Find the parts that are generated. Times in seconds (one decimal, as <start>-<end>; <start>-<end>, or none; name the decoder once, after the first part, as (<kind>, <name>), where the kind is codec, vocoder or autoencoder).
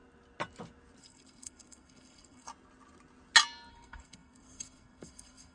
1.0-2.5 (codec, SNAC); 3.7-5.5